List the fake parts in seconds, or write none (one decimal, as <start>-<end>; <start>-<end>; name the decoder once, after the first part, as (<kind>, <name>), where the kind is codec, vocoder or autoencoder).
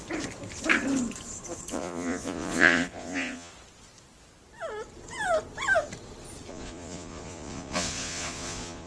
1.7-3.5 (vocoder, Vocos); 6.5-8.9